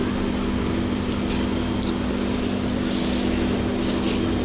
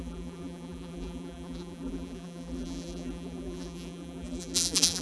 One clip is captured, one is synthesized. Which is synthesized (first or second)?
second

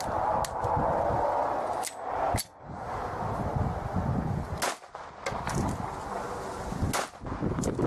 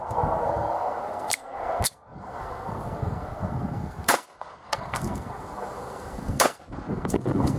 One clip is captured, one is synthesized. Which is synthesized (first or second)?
second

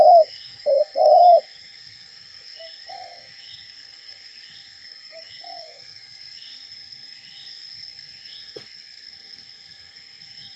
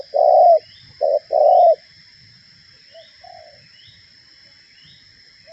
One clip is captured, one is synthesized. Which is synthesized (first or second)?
first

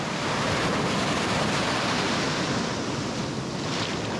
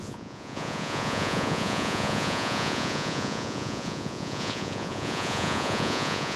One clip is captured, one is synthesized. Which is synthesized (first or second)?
second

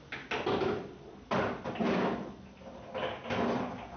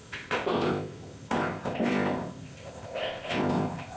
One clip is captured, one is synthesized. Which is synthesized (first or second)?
second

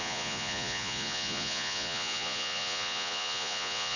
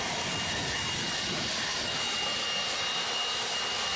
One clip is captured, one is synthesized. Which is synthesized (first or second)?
first